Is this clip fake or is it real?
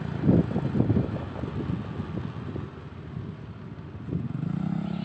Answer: real